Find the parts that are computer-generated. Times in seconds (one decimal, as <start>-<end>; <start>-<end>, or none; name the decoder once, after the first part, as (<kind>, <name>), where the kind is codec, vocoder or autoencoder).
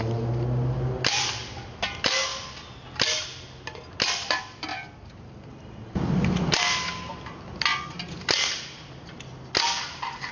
2.3-3.2 (vocoder, BigVGAN v2); 4.7-7.1; 7.7-8.6